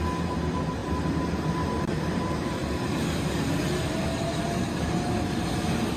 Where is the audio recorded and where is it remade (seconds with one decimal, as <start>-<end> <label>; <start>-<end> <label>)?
0.0-0.8 recorded; 0.8-4.4 remade; 4.4-6.0 recorded